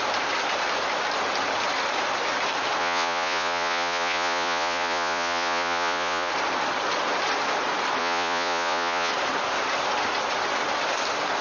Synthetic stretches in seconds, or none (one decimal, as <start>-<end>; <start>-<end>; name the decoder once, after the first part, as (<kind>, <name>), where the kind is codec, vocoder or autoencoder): 2.8-6.3 (vocoder, Vocos); 8.0-9.1